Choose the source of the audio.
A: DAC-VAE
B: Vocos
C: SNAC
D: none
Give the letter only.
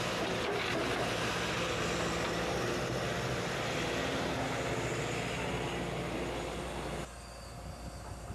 D